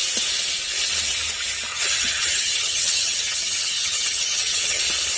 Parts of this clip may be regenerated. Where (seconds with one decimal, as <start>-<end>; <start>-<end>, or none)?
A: 1.7-4.8

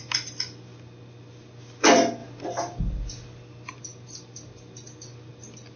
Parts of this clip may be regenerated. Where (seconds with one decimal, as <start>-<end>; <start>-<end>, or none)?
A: none

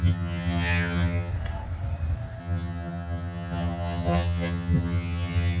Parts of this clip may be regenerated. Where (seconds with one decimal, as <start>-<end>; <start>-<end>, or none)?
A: 0.0-1.3; 2.4-5.6

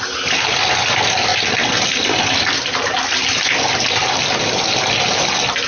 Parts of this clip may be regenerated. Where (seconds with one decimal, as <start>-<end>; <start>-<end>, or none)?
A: none